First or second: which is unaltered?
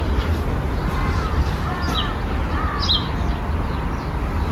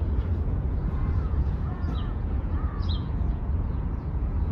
first